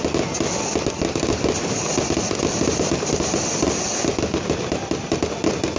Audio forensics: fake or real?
real